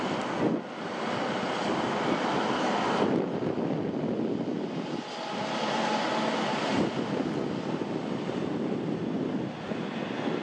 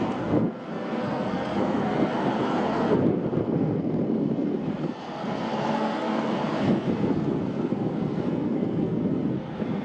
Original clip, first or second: first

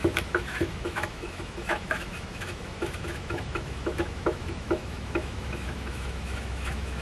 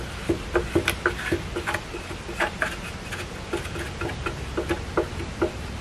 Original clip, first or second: second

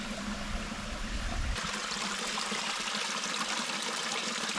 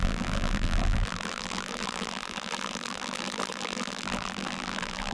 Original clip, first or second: first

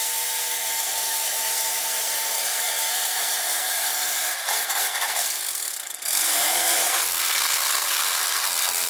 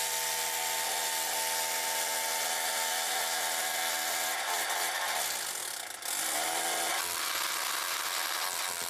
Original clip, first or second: second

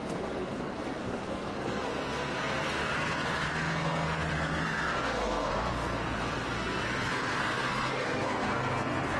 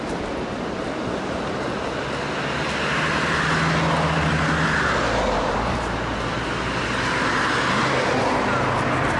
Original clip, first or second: second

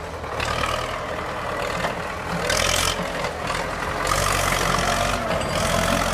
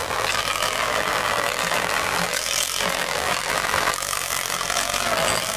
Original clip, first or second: first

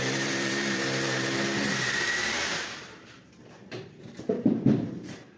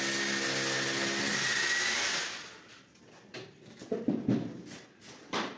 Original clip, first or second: second